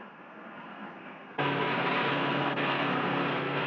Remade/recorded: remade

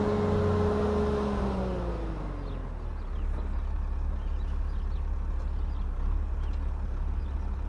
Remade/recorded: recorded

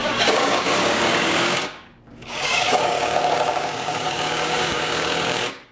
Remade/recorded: remade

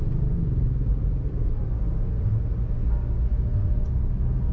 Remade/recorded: recorded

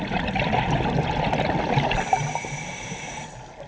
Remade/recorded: recorded